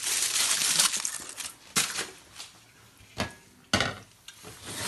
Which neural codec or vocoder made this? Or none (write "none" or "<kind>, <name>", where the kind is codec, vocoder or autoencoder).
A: none